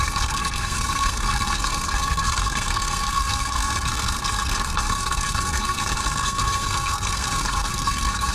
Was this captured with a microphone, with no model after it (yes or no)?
no